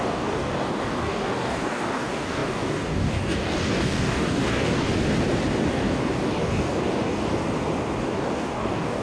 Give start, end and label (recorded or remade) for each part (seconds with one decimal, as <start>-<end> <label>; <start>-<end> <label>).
0.0-4.9 remade; 4.9-5.7 recorded; 5.7-7.4 remade; 7.4-8.0 recorded; 8.0-9.0 remade